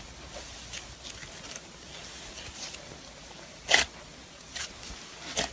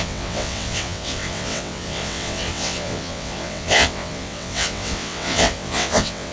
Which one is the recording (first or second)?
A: first